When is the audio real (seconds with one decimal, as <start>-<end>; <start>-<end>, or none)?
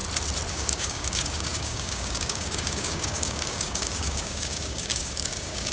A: 0.0-0.5